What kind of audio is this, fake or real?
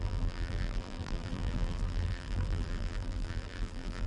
fake